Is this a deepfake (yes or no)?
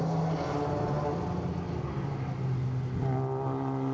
no